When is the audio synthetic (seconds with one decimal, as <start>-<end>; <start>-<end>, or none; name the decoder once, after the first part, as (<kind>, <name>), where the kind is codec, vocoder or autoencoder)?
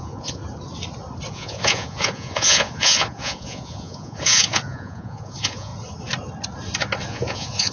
0.0-0.4 (vocoder, Vocos); 1.3-5.7; 7.1-7.7